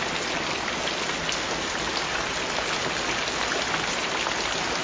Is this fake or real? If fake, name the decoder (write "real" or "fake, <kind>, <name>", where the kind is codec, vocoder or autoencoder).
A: real